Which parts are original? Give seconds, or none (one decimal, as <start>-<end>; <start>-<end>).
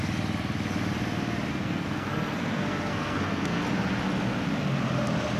0.0-1.5; 3.6-5.4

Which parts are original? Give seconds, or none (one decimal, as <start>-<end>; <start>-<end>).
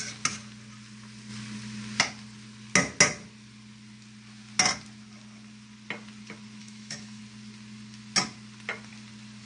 0.0-6.6; 7.2-9.5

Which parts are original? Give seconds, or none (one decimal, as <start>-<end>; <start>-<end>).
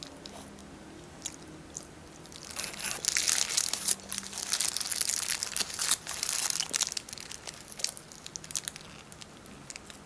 0.0-10.1